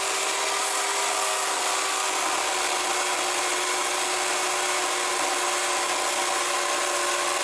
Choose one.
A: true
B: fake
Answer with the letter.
A